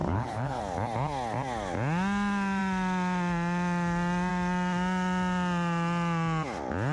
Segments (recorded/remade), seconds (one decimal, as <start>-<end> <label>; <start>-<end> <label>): 0.0-0.6 remade; 0.6-6.9 recorded